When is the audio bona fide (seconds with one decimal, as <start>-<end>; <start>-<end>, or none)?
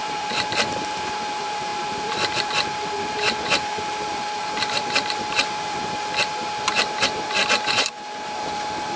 none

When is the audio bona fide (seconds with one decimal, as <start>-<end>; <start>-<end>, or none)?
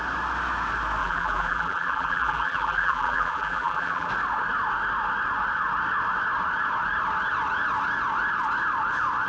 0.0-1.0; 4.1-9.3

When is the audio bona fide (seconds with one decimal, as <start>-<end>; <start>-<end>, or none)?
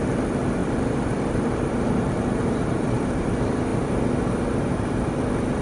0.0-0.6; 3.3-5.6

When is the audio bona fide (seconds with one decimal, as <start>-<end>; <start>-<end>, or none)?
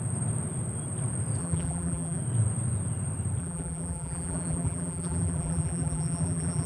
0.0-1.4; 2.2-3.4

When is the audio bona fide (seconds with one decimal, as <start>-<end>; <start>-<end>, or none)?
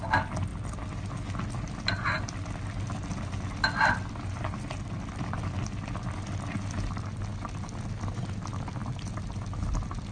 0.0-0.5; 1.0-8.8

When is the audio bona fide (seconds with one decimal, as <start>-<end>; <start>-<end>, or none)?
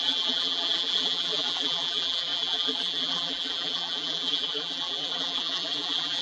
none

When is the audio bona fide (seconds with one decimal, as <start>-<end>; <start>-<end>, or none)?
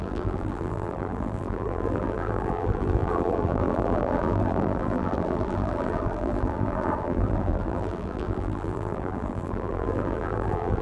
none